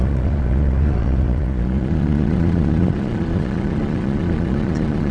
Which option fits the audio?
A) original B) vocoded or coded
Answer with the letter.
B